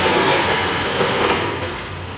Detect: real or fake fake